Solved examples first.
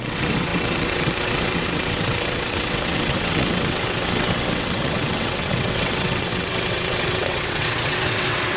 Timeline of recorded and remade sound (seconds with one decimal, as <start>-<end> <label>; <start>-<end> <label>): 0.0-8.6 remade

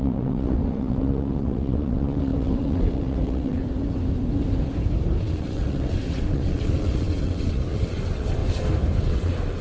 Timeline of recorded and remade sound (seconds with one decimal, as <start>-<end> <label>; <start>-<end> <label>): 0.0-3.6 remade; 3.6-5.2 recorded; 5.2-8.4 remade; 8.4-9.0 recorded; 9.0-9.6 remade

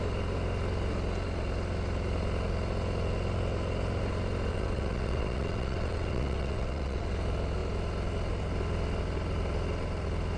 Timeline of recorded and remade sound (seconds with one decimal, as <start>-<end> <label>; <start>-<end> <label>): 0.0-4.5 recorded; 4.5-7.1 remade; 7.1-10.4 recorded